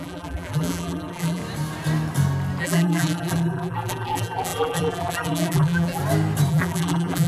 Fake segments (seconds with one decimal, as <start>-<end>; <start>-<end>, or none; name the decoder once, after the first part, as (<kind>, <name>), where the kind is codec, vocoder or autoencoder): 0.0-1.4 (vocoder, BigVGAN v2); 2.6-6.0; 6.5-7.3